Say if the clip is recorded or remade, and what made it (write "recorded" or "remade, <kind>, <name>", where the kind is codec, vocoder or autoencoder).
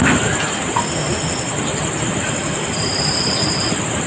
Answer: recorded